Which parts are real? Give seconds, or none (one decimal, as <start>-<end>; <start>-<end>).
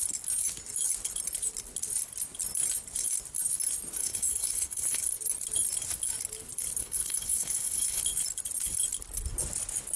0.0-4.0; 5.0-6.8; 8.0-10.0